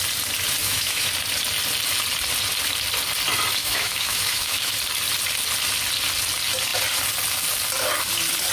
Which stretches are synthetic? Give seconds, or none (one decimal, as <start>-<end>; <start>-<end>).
0.6-1.1; 3.6-4.7